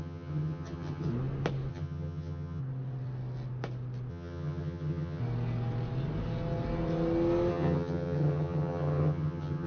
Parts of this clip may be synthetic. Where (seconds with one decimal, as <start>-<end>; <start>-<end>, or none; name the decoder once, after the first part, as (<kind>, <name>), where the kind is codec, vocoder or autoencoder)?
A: 0.0-1.1 (vocoder, HiFi-GAN); 1.7-2.6; 4.1-5.2; 7.5-9.7